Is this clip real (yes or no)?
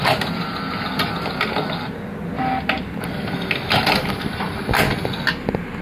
yes